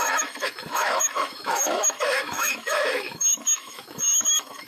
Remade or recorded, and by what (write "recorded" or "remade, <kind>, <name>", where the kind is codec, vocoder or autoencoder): remade, autoencoder, DAC-VAE